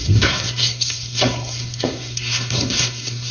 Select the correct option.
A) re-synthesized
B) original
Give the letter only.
A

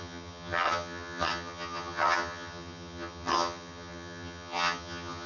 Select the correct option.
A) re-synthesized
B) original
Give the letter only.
A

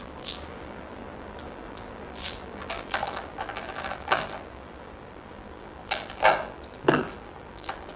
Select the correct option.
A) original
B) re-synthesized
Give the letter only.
B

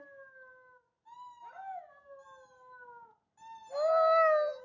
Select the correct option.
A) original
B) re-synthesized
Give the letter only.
A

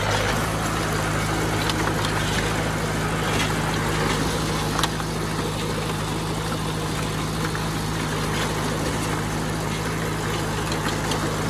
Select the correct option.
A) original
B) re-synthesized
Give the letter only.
A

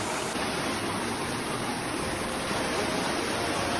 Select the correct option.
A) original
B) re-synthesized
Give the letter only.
A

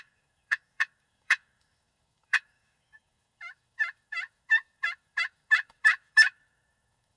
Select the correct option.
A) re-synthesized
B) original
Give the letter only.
A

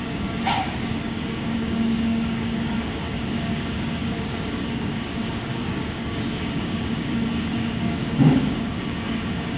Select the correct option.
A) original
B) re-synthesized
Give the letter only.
B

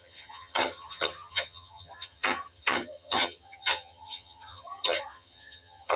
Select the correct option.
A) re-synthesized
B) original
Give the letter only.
A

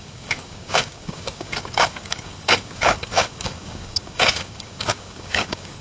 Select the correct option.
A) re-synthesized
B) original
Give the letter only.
A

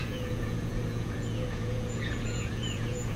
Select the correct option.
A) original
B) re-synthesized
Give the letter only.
B